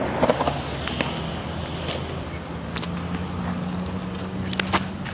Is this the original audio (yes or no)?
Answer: yes